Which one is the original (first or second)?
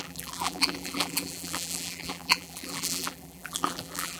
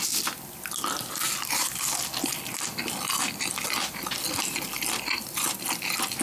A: second